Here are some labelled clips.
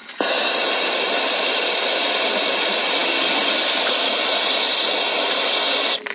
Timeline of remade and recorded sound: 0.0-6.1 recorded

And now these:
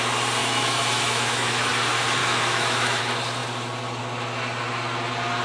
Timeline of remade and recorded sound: 0.0-0.4 recorded; 0.4-1.7 remade; 1.7-2.2 recorded; 2.2-3.0 remade; 3.0-5.4 recorded

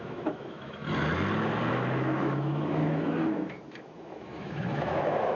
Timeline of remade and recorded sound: 0.0-0.8 remade; 0.8-1.7 recorded; 1.7-5.4 remade

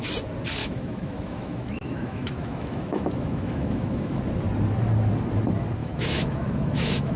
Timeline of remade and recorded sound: 0.0-0.6 recorded; 0.6-4.2 remade; 4.2-5.8 recorded; 5.8-7.2 remade

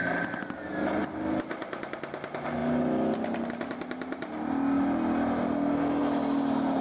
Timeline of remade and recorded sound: 0.0-6.8 recorded

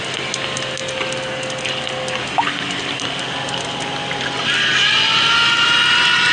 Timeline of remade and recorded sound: 0.0-6.3 recorded